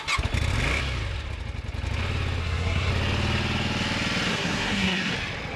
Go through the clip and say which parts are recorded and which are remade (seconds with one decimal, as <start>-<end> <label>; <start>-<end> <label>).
0.0-2.4 recorded; 2.4-2.9 remade; 2.9-4.3 recorded; 4.3-5.1 remade; 5.1-5.6 recorded